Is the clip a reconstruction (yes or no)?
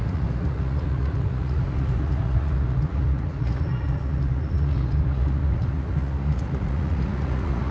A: yes